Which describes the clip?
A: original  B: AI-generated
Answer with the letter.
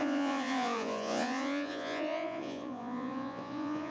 B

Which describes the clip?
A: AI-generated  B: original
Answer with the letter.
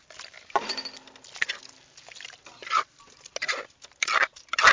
B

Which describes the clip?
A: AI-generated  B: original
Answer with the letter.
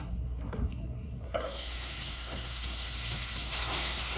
A